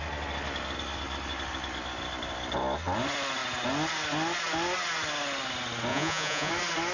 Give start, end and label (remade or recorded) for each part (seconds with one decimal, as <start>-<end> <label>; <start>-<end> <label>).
0.0-5.9 recorded; 5.9-6.5 remade; 6.5-6.9 recorded